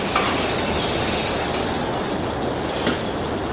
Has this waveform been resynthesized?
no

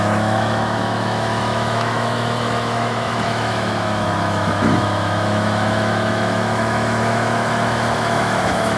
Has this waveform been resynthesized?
yes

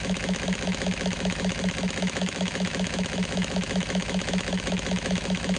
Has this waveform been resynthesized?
yes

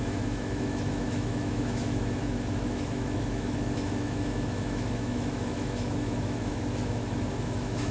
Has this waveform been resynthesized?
yes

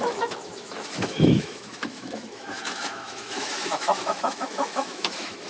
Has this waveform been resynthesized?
yes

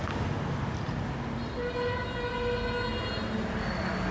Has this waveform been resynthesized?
no